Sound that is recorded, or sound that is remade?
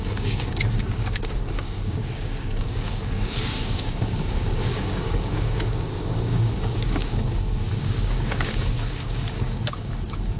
remade